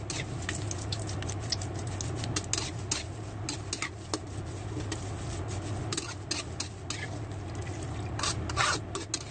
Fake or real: real